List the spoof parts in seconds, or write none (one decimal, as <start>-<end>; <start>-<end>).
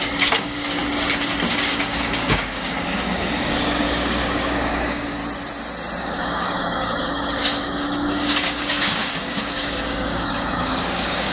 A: 0.0-0.8; 1.5-5.2; 6.0-11.3